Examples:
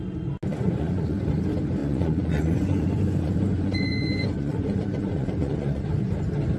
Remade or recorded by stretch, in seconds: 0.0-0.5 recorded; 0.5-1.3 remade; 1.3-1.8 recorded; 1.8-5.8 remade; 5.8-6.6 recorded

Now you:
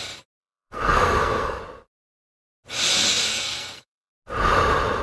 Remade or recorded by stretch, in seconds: 0.0-0.4 recorded; 0.4-1.6 remade; 1.6-3.3 recorded; 3.3-4.1 remade; 4.1-5.0 recorded

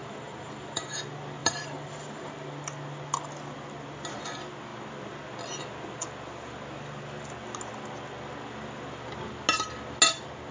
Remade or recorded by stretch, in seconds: 0.0-1.0 remade; 1.0-1.4 recorded; 1.4-2.3 remade; 2.3-10.5 recorded

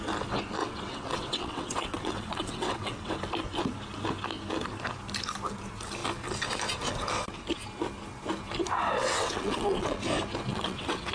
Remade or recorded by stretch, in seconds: 0.0-0.6 recorded; 0.6-3.1 remade; 3.1-9.0 recorded; 9.0-10.0 remade; 10.0-10.5 recorded; 10.5-11.1 remade

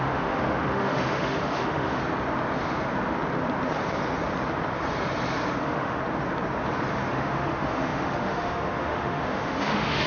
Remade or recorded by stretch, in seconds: 0.0-2.0 remade; 2.0-5.6 recorded; 5.6-6.0 remade; 6.0-7.1 recorded; 7.1-10.1 remade